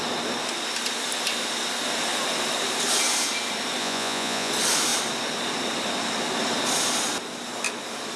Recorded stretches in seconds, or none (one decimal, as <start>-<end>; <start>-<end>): 0.0-3.8; 4.5-8.2